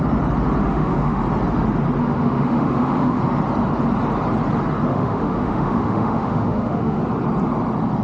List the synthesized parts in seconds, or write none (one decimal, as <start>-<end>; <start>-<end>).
0.6-1.2; 2.0-3.2; 4.9-7.0